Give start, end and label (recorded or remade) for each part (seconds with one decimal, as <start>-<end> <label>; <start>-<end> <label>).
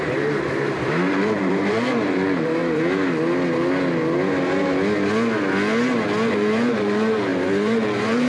0.0-2.6 remade; 2.6-6.3 recorded; 6.3-8.3 remade